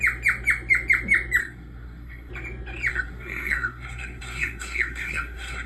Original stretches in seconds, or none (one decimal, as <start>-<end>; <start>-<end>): 0.0-1.4; 2.3-2.9